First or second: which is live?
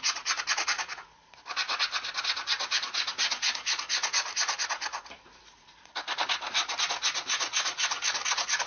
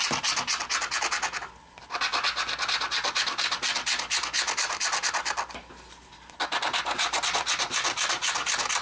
second